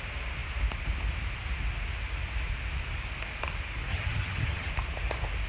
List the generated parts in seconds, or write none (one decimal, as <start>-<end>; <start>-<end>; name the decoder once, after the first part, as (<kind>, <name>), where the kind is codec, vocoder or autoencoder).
3.9-4.7 (vocoder, HiFi-GAN)